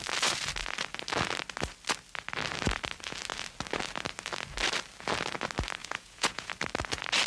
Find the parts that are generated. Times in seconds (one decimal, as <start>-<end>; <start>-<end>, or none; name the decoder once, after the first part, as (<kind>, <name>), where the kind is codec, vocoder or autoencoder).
5.8-6.5 (vocoder, Vocos)